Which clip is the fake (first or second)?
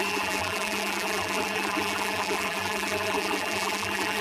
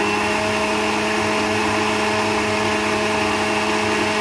first